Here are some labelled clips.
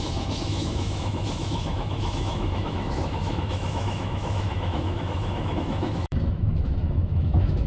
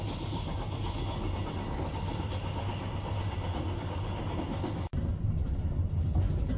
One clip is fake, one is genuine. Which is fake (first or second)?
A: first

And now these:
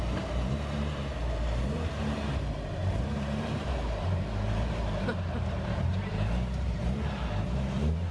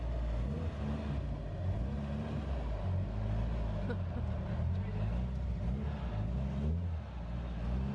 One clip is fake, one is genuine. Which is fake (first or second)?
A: first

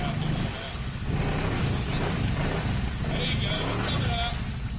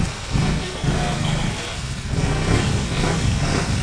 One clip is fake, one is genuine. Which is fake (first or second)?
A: second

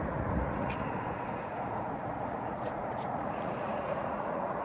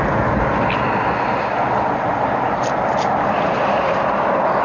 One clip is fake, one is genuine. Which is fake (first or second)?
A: first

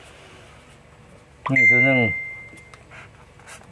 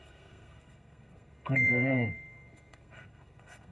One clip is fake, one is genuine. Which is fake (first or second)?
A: second